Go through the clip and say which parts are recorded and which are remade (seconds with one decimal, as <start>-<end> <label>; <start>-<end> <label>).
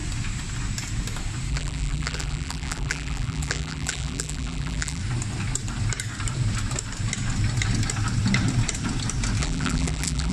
0.0-1.5 recorded; 1.5-5.0 remade; 5.0-9.4 recorded; 9.4-10.3 remade